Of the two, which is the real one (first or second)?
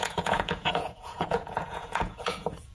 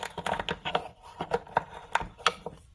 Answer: second